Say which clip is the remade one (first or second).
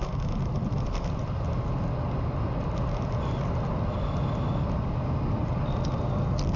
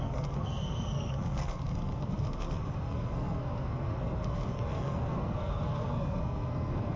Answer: second